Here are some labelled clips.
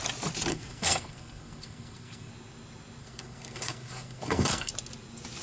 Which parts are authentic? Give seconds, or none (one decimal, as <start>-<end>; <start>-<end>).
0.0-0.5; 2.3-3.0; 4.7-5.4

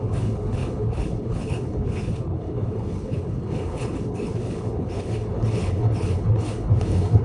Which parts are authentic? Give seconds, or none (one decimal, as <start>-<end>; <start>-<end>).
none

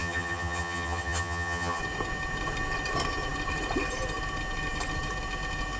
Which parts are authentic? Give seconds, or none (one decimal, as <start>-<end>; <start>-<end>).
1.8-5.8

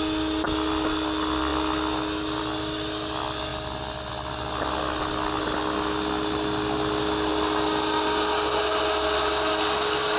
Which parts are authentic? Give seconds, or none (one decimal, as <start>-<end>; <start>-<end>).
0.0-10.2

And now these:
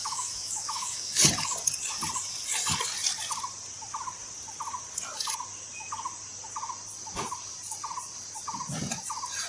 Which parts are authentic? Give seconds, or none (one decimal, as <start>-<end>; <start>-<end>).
1.2-9.5

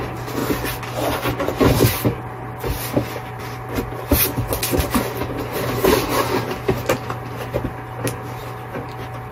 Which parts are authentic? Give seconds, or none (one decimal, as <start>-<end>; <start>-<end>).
0.0-9.3

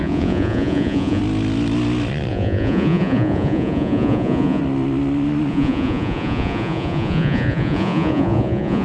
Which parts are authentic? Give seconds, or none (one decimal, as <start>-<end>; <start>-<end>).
1.2-2.3; 4.6-5.5

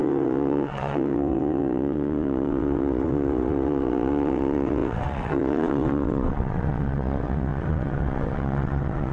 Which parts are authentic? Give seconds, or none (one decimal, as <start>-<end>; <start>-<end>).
none